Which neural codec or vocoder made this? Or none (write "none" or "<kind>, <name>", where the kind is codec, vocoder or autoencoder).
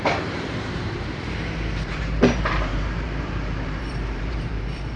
vocoder, BigVGAN v2